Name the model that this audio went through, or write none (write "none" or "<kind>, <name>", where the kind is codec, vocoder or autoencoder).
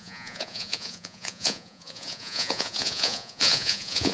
vocoder, Vocos